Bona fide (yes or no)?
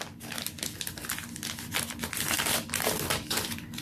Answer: yes